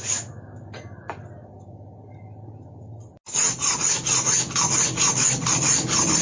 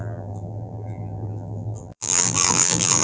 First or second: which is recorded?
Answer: first